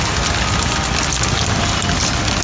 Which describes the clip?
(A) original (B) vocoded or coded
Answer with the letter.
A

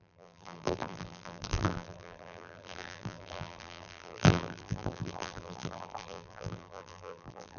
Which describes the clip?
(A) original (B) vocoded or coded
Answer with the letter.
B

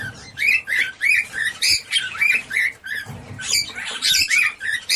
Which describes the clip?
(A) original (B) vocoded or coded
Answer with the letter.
B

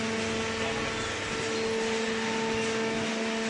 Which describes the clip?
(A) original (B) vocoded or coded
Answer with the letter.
A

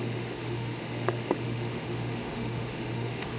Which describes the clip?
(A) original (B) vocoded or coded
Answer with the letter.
B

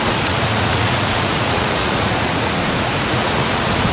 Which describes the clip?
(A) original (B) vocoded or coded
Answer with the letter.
B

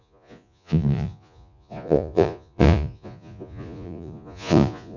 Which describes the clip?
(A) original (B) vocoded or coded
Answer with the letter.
B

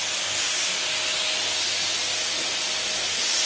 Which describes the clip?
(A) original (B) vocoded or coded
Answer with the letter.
A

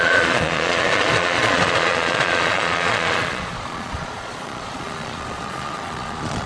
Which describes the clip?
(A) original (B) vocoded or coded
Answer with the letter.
B